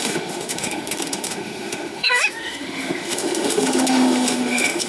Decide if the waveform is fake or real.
fake